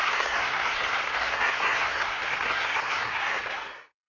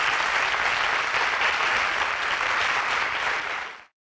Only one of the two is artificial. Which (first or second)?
first